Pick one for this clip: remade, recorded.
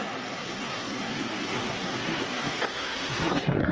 remade